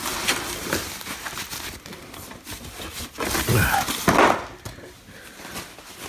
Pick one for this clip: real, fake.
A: real